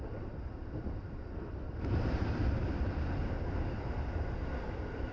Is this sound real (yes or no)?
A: no